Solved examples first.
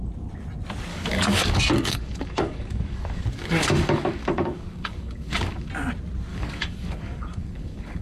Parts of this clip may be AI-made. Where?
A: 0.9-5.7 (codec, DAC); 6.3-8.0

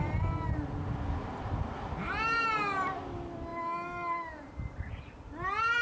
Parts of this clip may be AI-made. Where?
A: none

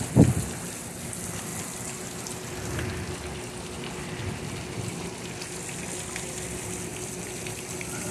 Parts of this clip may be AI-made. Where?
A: none

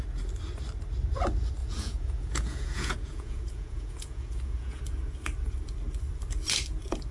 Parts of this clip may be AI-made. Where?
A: 1.6-4.8 (vocoder, Vocos)

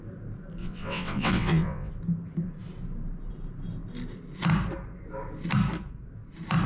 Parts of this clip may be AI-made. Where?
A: 0.6-1.9 (vocoder, WaveNeXt)